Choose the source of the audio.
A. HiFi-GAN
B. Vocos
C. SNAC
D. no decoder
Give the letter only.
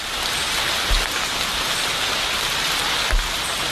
D